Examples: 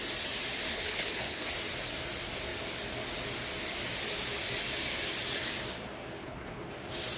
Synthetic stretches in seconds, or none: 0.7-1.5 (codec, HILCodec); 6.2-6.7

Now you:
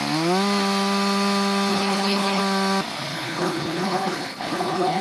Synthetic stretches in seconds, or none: 1.7-2.4 (codec, HILCodec); 3.1-5.0

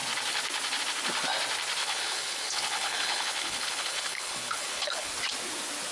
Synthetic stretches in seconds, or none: 1.8-5.1 (codec, HILCodec)

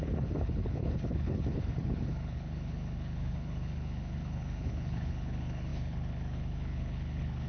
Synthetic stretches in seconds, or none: 0.0-7.5 (codec, HILCodec)

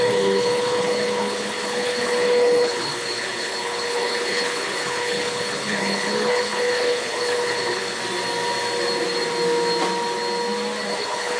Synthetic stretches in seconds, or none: 0.0-8.0 (codec, HILCodec); 10.9-11.4